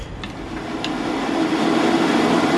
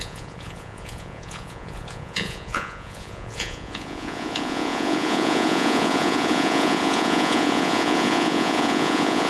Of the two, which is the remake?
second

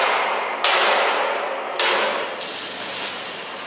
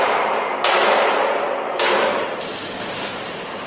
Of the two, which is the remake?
second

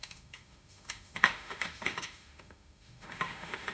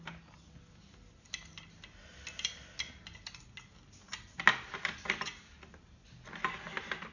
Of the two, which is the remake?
first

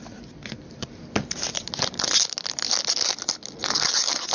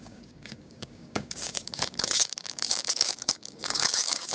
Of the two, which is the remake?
second